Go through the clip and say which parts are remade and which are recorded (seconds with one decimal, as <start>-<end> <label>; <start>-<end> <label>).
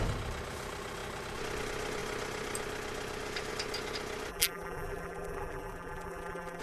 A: 0.0-4.3 recorded; 4.3-6.6 remade